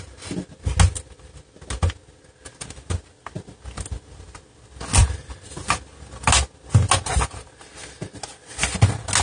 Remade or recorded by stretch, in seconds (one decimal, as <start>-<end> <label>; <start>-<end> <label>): 0.0-9.2 recorded